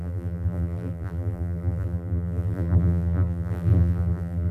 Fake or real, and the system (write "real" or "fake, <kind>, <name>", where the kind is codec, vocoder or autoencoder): fake, vocoder, BigVGAN v2